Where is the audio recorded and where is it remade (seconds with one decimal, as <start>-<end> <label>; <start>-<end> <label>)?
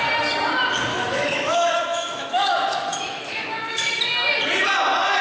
0.0-0.9 recorded; 0.9-4.0 remade; 4.0-5.2 recorded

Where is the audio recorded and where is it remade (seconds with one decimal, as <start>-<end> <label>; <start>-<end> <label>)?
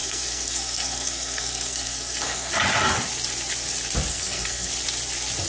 0.0-2.5 remade; 2.5-4.1 recorded; 4.1-4.7 remade; 4.7-5.5 recorded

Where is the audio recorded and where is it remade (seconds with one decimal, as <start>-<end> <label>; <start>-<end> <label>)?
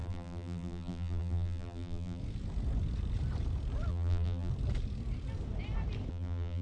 0.0-2.2 remade; 2.2-3.9 recorded; 3.9-4.5 remade; 4.5-6.1 recorded; 6.1-6.6 remade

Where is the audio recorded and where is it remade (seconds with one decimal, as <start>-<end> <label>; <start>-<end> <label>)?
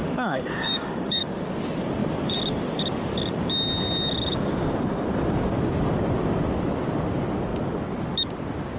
0.0-1.2 remade; 1.2-8.8 recorded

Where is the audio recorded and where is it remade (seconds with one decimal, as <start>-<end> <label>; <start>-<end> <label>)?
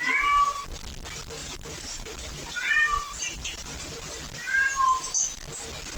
0.0-1.4 recorded; 1.4-4.0 remade; 4.0-6.0 recorded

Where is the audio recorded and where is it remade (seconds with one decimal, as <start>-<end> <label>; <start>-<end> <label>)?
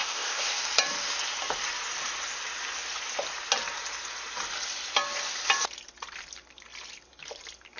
0.0-0.6 remade; 0.6-7.8 recorded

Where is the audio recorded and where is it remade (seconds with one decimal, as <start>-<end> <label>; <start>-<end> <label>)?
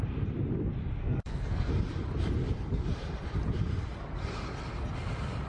0.0-1.0 recorded; 1.0-1.7 remade; 1.7-5.5 recorded